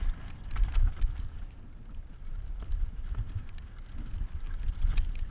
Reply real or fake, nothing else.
real